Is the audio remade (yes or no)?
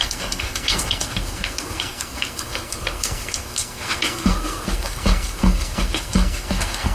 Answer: yes